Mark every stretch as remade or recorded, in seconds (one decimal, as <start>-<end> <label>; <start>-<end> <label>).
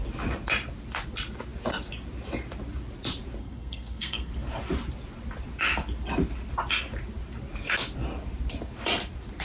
0.0-3.4 recorded; 3.4-4.3 remade; 4.3-9.4 recorded